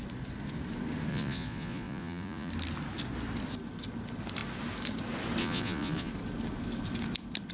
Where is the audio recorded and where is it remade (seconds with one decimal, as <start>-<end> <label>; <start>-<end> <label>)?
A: 0.0-1.1 recorded; 1.1-2.5 remade; 2.5-5.4 recorded; 5.4-6.1 remade; 6.1-7.5 recorded